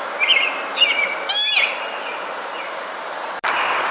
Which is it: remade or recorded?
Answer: recorded